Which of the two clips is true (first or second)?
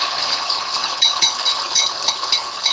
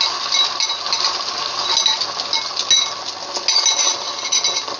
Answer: second